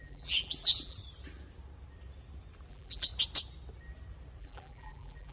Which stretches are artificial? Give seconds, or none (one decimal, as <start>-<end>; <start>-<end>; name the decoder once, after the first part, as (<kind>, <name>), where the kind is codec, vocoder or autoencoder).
0.0-1.0 (vocoder, BigVGAN v2); 2.7-3.1; 4.4-5.3